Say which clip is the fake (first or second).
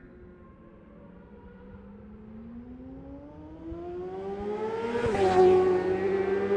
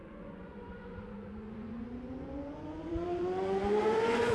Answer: second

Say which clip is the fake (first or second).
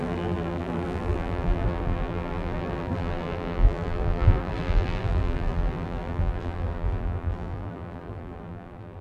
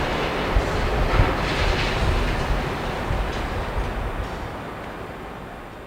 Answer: first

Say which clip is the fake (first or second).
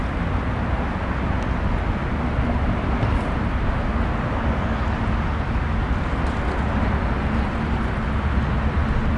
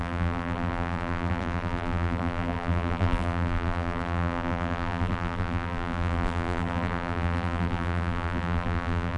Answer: second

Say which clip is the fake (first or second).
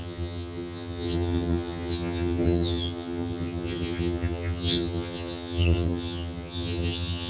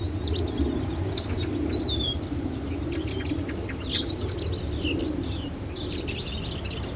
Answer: first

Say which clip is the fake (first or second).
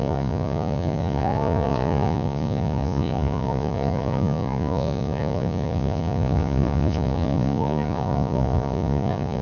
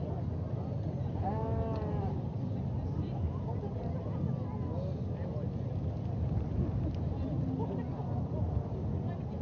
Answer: first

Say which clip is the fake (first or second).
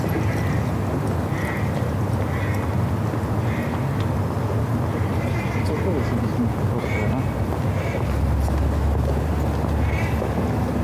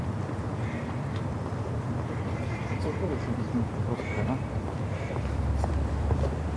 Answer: second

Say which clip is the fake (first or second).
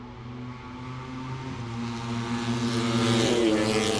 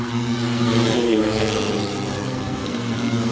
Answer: second